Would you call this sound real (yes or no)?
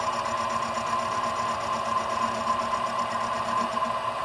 yes